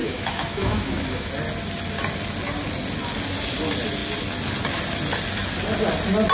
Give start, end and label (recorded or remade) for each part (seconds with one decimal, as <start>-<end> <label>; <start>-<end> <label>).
0.0-1.3 remade; 1.3-6.3 recorded